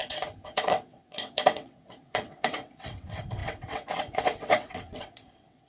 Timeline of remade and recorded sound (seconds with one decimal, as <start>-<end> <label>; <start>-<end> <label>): 0.0-5.7 remade